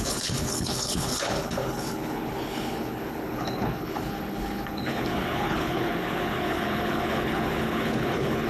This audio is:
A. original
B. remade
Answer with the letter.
B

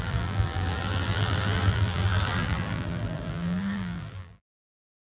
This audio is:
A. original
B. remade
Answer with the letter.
B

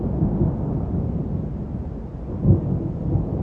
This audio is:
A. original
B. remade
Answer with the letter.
A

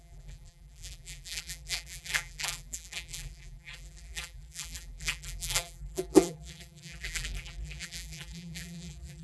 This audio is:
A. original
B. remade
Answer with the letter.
B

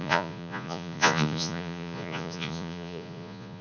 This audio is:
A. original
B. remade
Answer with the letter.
B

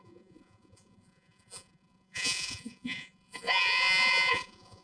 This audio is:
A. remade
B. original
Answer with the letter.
A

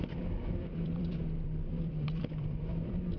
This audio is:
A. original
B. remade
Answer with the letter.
B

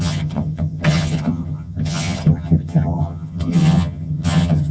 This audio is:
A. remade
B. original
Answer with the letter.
A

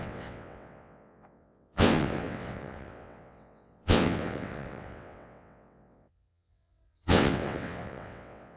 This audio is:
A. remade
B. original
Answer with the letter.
A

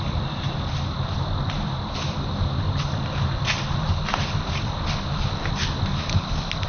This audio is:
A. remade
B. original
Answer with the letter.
B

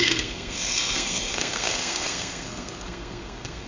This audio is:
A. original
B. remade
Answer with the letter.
B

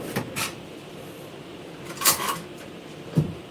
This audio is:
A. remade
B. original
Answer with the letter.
A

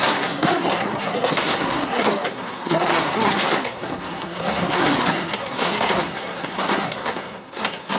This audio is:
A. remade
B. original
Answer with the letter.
A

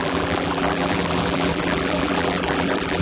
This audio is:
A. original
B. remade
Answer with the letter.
B